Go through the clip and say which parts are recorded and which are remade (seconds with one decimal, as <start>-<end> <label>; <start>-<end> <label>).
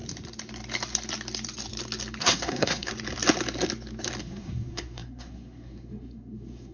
0.0-2.2 recorded; 2.2-2.9 remade; 2.9-4.2 recorded; 4.2-6.7 remade